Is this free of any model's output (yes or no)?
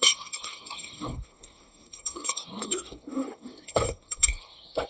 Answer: no